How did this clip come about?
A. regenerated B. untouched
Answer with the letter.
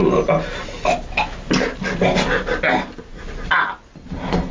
B